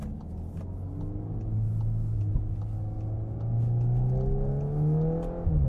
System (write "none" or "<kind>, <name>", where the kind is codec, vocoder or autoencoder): none